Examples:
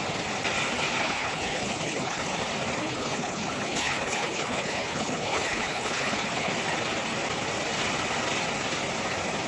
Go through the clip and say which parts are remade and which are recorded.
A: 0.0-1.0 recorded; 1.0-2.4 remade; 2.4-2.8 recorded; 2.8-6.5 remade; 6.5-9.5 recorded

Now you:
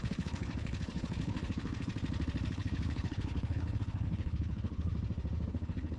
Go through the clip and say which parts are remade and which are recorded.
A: 0.0-1.9 remade; 1.9-2.5 recorded; 2.5-4.9 remade; 4.9-5.5 recorded; 5.5-6.0 remade

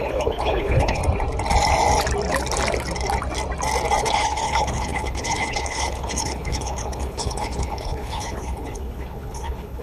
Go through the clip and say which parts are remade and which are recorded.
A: 0.0-1.0 remade; 1.0-4.0 recorded; 4.0-9.8 remade

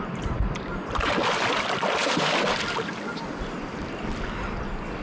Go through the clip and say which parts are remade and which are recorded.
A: 0.0-5.0 recorded

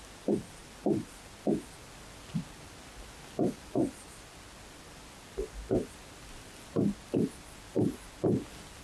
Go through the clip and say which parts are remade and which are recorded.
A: 0.0-8.8 recorded

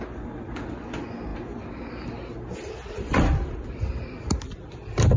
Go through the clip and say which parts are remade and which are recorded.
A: 0.0-5.2 recorded

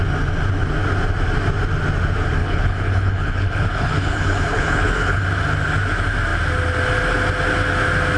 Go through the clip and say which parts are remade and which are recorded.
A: 0.0-2.4 recorded; 2.4-5.2 remade; 5.2-8.2 recorded

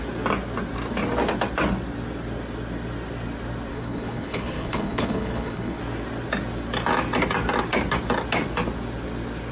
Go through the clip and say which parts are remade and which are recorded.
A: 0.0-3.7 recorded; 3.7-5.8 remade; 5.8-9.5 recorded